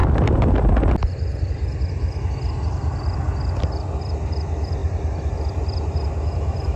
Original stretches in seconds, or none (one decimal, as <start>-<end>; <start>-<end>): 0.0-6.8